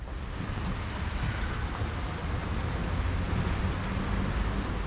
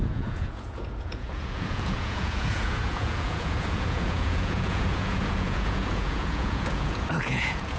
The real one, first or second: first